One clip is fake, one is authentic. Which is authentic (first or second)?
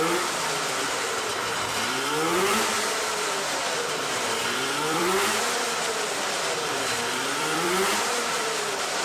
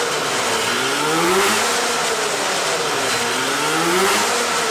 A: second